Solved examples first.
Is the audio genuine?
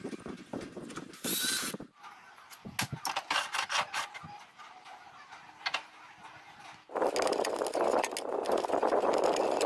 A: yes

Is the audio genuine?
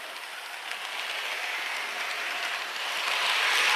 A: no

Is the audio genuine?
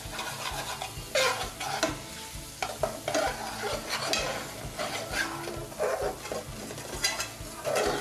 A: yes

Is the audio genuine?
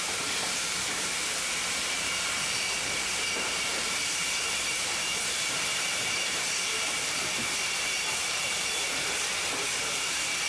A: no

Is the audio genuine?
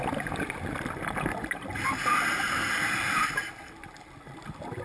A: yes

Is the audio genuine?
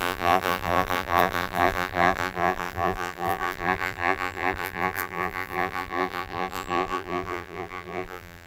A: no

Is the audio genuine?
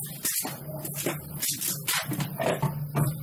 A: yes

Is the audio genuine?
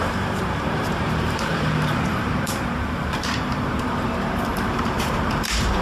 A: no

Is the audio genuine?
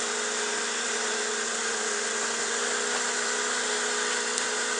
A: no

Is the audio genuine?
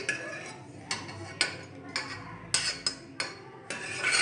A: yes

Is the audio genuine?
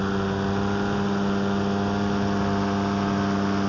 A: yes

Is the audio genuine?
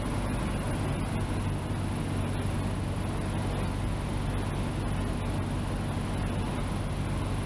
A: yes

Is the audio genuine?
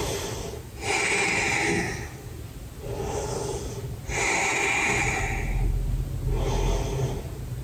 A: yes